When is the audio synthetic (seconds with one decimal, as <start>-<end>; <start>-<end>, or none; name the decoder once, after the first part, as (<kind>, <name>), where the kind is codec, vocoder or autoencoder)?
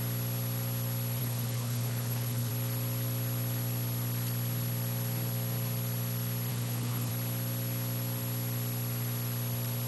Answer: 1.2-2.5 (codec, HILCodec); 6.5-7.1